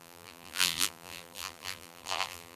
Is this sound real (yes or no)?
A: no